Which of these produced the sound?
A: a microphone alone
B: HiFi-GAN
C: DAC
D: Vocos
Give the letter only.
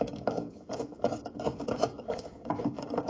C